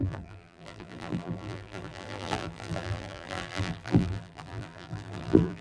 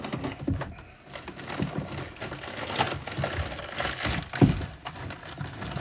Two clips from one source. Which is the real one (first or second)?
second